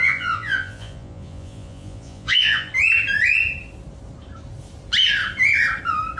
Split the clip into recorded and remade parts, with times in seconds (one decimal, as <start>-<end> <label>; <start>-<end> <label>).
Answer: 0.0-2.7 remade; 2.7-6.2 recorded